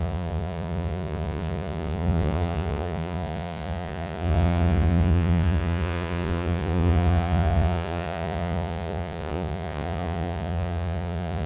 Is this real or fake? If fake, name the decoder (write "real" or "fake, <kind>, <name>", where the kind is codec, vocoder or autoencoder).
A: fake, vocoder, Vocos